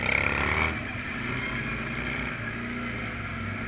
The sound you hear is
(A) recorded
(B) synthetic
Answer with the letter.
A